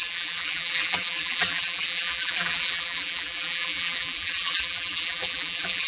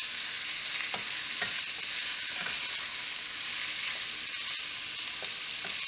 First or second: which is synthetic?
first